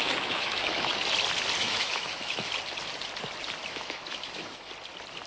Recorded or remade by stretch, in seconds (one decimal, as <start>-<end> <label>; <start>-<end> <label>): 0.0-1.0 remade; 1.0-1.6 recorded; 1.6-2.5 remade; 2.5-3.7 recorded; 3.7-4.7 remade; 4.7-5.3 recorded